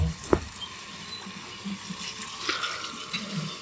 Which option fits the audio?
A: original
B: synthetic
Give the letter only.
A